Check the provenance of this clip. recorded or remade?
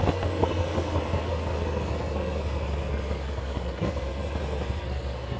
remade